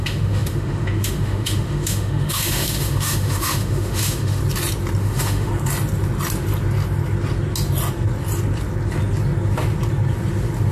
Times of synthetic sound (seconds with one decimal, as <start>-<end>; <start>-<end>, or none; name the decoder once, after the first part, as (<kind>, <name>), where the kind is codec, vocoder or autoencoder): 0.0-4.4 (autoencoder, DAC-VAE); 5.0-5.5